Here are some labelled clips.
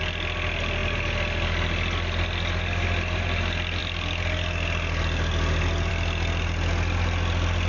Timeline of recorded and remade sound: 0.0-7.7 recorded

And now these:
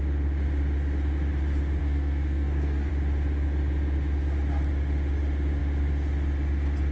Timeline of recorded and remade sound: 0.0-1.8 recorded; 1.8-2.9 remade; 2.9-6.9 recorded

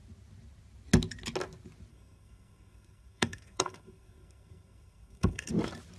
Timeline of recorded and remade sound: 0.0-1.9 recorded; 1.9-5.5 remade; 5.5-6.0 recorded

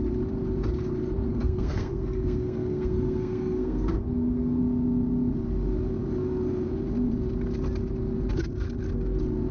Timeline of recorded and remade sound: 0.0-1.3 recorded; 1.3-4.6 remade; 4.6-9.5 recorded

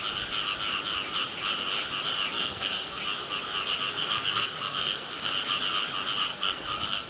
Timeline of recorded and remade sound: 0.0-2.3 recorded; 2.3-3.0 remade; 3.0-4.0 recorded; 4.0-5.3 remade; 5.3-6.3 recorded; 6.3-7.1 remade